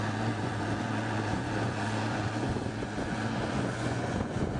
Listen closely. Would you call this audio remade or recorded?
remade